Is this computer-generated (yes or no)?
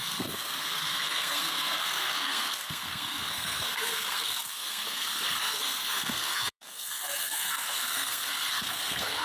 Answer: yes